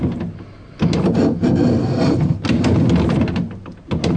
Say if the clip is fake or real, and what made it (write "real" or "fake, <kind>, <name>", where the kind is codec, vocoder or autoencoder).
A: real